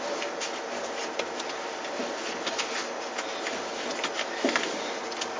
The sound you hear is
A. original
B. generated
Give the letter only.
A